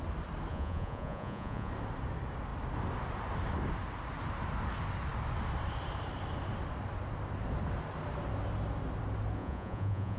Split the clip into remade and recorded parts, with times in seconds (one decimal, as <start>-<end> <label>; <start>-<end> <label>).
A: 0.0-0.5 recorded; 0.5-1.7 remade; 1.7-9.4 recorded; 9.4-10.2 remade